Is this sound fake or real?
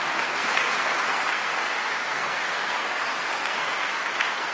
fake